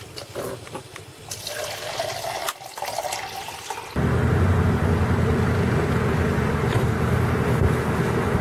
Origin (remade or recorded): recorded